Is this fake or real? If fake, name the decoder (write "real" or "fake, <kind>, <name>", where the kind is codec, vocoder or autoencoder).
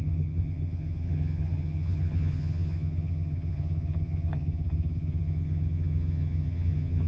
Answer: fake, vocoder, HiFi-GAN